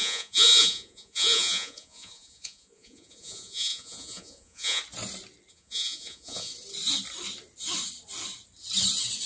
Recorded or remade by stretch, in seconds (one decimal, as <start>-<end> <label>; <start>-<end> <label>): 0.0-4.8 remade; 4.8-5.5 recorded; 5.5-6.5 remade; 6.5-9.3 recorded